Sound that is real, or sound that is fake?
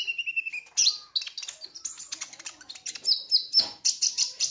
real